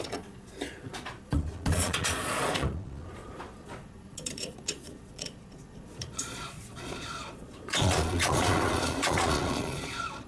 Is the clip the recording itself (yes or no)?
no